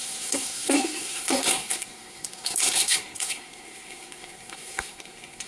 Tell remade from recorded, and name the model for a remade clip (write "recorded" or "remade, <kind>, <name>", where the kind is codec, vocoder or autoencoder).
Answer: remade, codec, SNAC